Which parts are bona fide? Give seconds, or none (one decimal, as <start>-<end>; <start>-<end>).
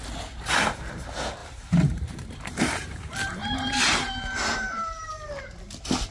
0.0-1.4; 5.1-6.1